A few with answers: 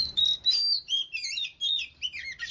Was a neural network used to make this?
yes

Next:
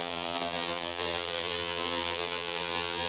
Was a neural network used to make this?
yes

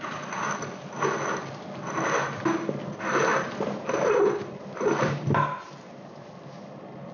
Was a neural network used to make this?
no